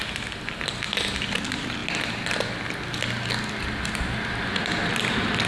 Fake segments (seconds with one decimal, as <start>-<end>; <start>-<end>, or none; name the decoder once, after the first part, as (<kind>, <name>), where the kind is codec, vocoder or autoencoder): none